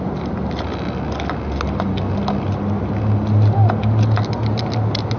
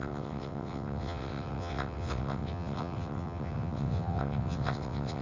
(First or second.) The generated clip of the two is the second